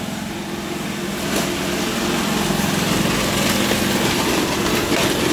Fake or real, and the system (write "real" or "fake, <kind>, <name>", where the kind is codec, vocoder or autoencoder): real